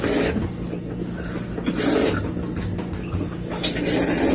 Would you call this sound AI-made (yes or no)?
no